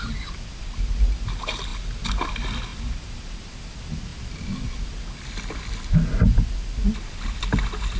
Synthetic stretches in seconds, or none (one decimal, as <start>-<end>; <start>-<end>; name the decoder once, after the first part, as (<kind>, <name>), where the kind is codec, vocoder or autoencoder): none